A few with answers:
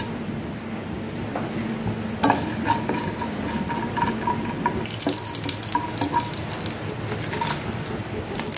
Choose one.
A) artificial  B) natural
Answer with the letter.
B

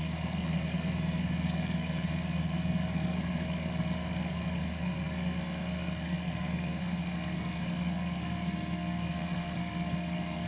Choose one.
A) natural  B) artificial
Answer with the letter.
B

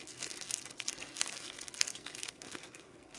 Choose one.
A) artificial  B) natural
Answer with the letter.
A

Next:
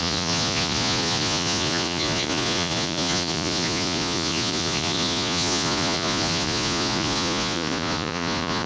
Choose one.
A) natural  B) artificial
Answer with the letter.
B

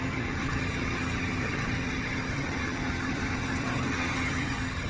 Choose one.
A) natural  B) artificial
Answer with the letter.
B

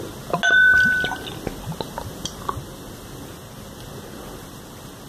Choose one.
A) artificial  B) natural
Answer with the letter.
B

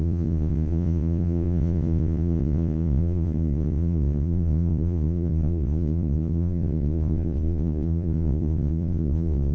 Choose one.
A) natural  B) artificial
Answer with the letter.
B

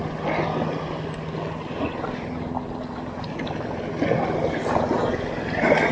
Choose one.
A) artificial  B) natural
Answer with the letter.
B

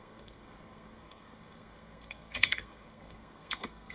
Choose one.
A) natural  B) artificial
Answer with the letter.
B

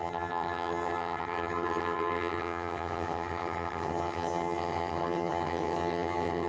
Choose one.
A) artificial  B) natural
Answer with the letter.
A